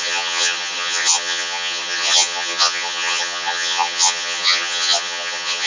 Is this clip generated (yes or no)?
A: yes